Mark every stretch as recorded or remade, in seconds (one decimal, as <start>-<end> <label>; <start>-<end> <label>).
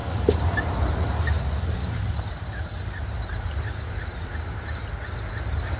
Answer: 0.0-5.8 remade